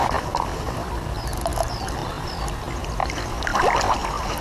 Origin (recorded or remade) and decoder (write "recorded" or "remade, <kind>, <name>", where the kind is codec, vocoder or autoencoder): recorded